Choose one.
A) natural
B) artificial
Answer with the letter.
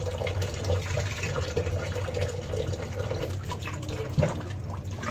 B